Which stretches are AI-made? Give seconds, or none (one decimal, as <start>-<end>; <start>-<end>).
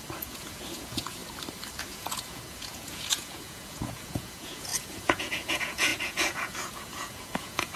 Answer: 0.0-1.2; 1.8-7.8